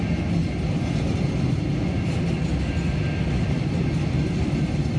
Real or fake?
real